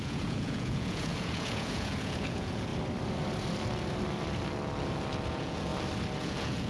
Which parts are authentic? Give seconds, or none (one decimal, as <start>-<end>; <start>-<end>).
2.7-5.3; 5.7-6.2